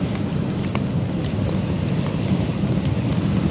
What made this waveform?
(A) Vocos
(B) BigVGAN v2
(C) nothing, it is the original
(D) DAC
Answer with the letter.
C